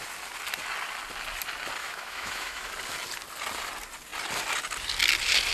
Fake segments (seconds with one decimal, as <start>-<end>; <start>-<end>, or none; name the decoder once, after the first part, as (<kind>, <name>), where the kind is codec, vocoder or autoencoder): 1.8-2.7 (autoencoder, DAC-VAE)